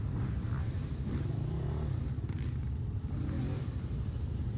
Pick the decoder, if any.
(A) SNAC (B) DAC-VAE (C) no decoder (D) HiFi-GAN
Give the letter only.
C